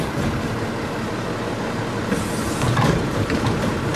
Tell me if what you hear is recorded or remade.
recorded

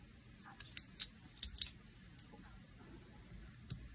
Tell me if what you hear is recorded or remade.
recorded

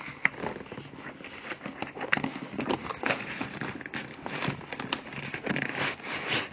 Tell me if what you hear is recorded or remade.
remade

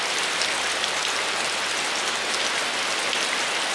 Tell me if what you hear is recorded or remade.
recorded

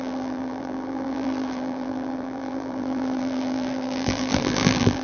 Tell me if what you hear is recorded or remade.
remade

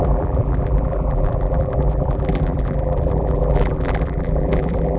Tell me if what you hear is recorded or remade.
remade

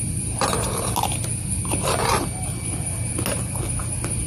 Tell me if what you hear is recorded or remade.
recorded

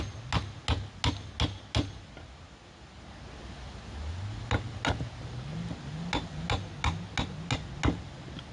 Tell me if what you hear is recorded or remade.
recorded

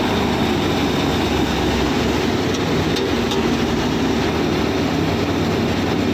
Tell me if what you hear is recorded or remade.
recorded